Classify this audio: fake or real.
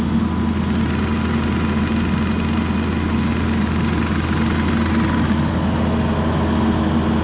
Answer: real